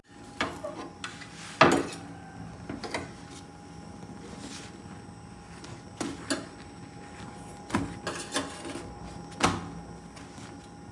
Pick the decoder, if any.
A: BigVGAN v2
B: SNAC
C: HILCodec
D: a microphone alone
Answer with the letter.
D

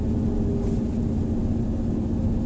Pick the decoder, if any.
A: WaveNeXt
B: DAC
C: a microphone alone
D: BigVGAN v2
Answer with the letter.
C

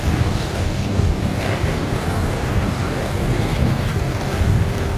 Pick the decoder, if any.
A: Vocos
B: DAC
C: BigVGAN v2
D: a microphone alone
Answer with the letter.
B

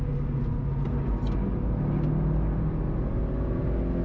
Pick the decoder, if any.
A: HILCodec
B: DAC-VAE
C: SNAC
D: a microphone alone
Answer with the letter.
D